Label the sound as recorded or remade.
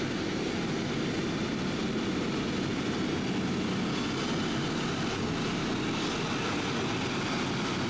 recorded